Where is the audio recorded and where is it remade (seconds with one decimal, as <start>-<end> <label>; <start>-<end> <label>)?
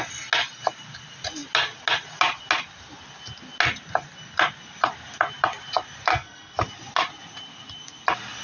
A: 0.0-6.1 recorded; 6.1-6.6 remade; 6.6-8.4 recorded